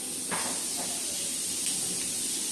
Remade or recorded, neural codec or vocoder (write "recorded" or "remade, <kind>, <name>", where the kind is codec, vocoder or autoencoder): recorded